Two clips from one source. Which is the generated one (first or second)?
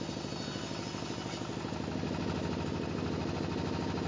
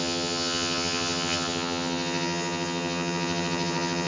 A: second